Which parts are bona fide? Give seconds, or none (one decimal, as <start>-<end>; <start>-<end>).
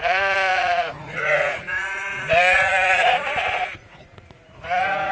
none